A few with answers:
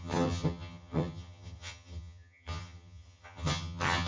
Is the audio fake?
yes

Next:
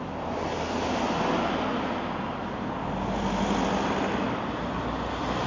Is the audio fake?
no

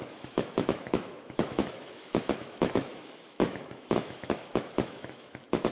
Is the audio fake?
yes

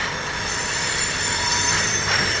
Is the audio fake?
yes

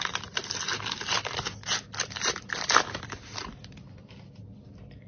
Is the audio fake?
no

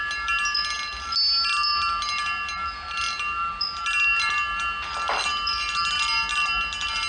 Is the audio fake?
no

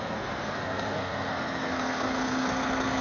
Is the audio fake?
yes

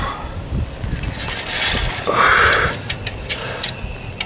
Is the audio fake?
no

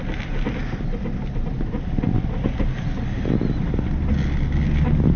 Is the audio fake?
no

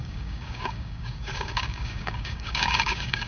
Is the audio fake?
yes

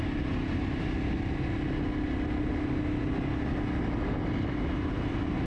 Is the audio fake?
no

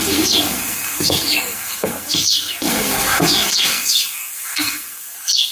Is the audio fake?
yes